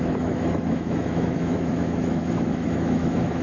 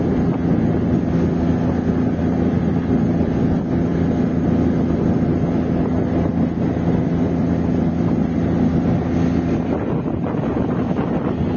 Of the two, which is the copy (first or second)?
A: first